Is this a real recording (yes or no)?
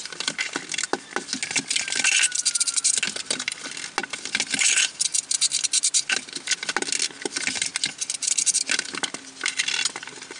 yes